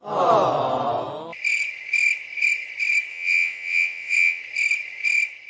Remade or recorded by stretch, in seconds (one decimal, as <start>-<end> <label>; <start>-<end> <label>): 0.0-3.1 recorded; 3.1-4.4 remade; 4.4-5.5 recorded